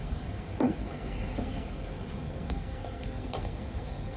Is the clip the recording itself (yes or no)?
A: no